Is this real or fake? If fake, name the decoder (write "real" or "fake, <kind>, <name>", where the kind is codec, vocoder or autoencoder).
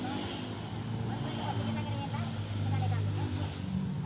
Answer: real